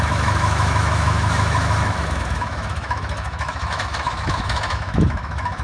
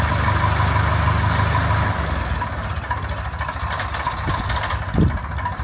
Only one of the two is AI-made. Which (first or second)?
first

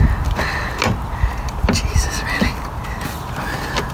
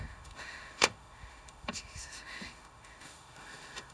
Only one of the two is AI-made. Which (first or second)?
second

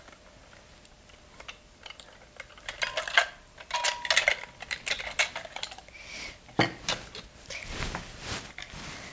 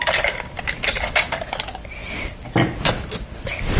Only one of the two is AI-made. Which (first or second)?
second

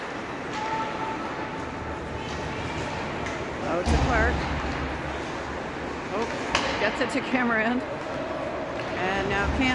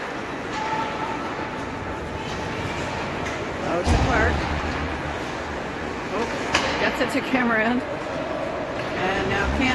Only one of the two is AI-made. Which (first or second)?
second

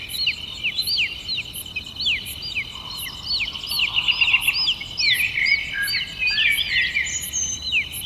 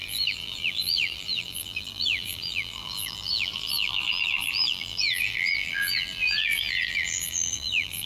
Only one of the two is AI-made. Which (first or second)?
second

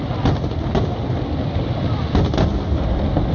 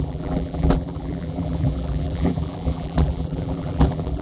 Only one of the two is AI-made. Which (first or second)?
second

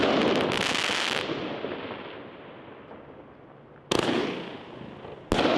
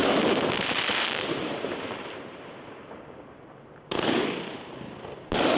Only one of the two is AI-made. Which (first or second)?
second